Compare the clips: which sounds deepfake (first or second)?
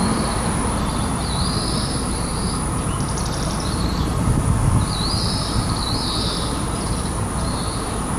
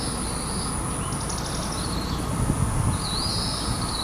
first